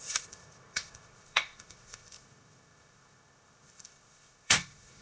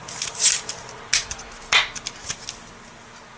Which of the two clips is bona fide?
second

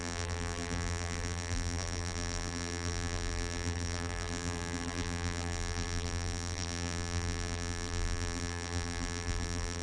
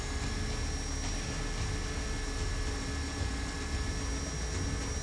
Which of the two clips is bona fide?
second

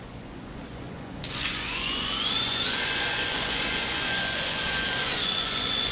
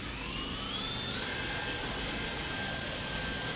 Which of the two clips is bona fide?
second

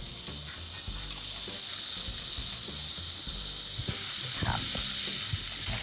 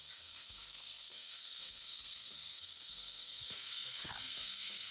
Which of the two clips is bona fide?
first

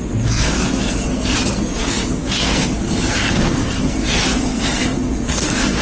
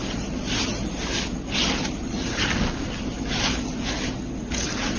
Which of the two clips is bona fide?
second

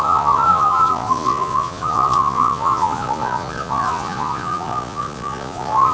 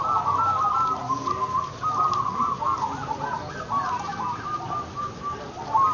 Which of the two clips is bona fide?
second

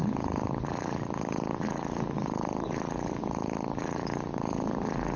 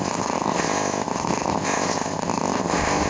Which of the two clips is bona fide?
first